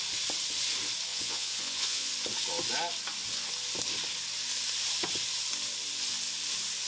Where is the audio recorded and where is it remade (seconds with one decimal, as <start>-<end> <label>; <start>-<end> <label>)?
0.0-1.1 recorded; 1.1-2.1 remade; 2.1-6.9 recorded